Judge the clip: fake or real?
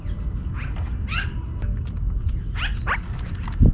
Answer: real